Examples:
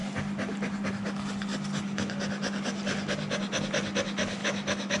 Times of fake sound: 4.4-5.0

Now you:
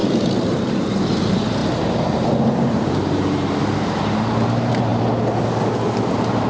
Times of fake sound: 0.0-4.9; 6.1-6.5

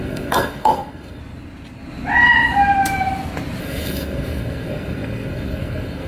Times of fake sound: 0.0-1.2; 3.6-6.1

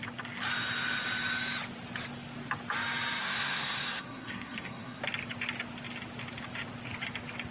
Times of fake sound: 3.2-5.0

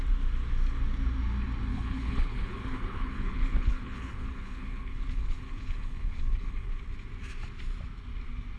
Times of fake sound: 1.7-6.8

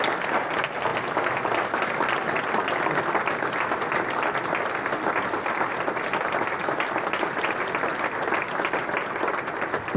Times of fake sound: none